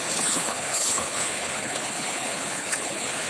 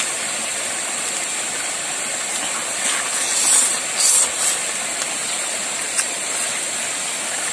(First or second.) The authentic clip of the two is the second